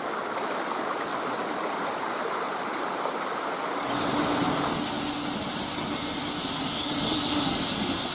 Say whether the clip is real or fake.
real